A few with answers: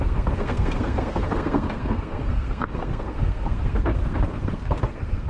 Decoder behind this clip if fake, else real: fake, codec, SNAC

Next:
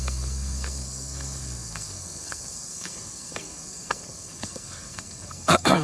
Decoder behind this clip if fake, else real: fake, codec, SNAC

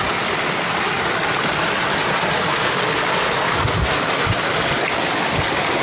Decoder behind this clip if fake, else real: real